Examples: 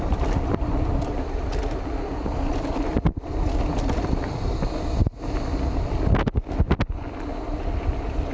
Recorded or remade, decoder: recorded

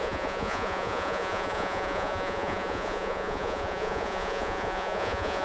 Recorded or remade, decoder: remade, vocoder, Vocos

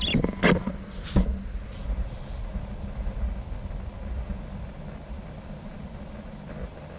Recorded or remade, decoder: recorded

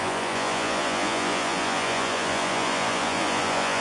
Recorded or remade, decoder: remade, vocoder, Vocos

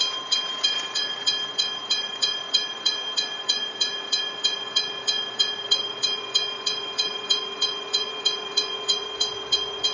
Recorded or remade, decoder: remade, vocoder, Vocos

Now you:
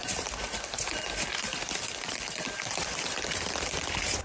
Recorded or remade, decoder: remade, vocoder, BigVGAN v2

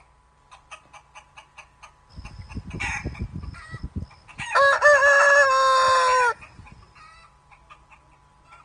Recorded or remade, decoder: recorded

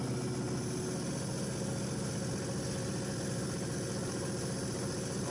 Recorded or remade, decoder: recorded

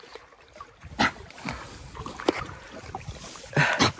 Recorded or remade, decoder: recorded